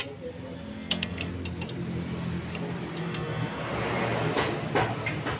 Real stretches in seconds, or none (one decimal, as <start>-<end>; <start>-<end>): 0.0-0.7; 1.3-3.0; 3.6-5.4